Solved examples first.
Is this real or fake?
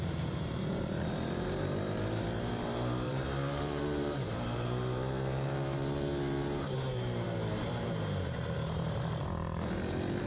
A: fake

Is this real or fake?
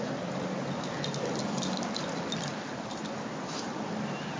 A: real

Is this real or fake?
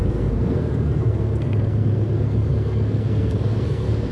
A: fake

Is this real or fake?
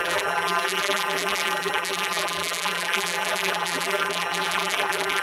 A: fake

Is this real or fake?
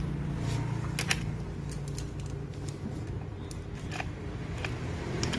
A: real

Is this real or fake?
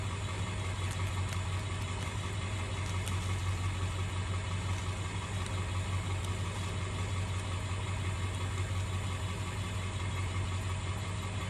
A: real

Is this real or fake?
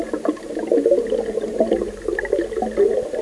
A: real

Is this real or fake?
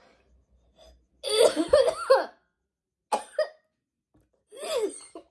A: real